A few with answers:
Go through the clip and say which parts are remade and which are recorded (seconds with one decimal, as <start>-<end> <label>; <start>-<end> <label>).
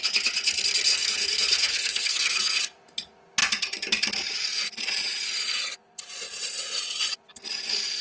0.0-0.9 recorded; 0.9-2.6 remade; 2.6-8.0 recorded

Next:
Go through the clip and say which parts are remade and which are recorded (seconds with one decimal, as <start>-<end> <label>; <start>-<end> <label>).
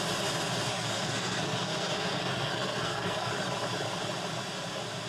0.0-0.7 recorded; 0.7-3.3 remade; 3.3-5.1 recorded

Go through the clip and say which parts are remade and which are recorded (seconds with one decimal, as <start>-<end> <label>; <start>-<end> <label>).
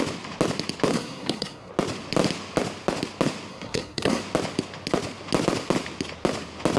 0.0-0.9 recorded; 0.9-1.7 remade; 1.7-3.5 recorded; 3.5-4.2 remade; 4.2-6.8 recorded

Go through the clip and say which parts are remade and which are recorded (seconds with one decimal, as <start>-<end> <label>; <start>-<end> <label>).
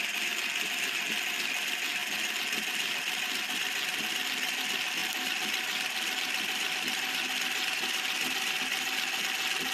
0.0-9.7 recorded